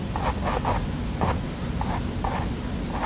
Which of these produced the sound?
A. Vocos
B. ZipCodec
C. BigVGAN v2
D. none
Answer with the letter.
D